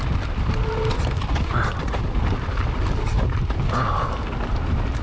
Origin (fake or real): real